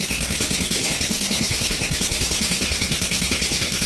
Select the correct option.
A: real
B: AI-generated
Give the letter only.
B